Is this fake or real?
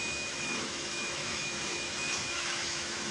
fake